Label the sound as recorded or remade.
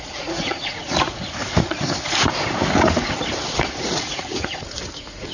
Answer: remade